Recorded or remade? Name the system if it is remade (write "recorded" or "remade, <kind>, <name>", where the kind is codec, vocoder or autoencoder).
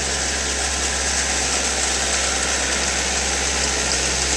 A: recorded